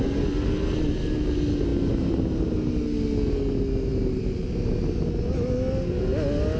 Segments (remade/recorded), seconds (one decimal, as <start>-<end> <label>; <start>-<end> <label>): 0.0-6.6 recorded

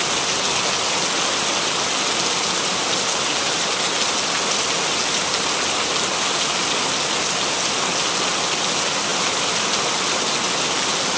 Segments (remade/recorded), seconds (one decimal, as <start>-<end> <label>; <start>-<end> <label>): 0.0-9.1 recorded; 9.1-10.0 remade; 10.0-11.2 recorded

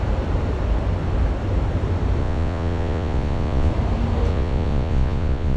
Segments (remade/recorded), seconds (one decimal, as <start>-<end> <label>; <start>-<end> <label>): 0.0-2.2 recorded; 2.2-3.7 remade; 3.7-4.3 recorded; 4.3-5.6 remade